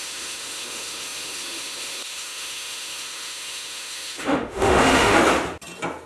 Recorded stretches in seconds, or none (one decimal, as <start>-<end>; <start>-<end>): 5.2-6.1